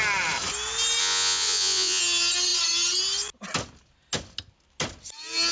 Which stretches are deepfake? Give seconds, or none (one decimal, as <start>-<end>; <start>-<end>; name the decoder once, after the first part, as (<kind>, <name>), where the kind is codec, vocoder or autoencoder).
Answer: 1.0-2.0 (vocoder, Vocos)